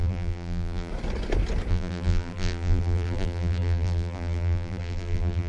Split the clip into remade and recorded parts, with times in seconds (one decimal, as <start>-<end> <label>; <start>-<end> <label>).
0.0-0.9 remade; 0.9-1.7 recorded; 1.7-5.5 remade